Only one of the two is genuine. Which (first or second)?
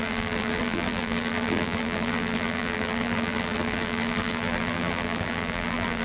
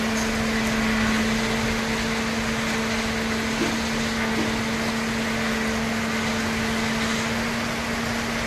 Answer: second